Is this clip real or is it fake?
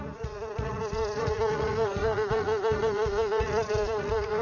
fake